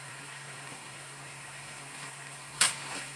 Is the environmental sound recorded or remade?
remade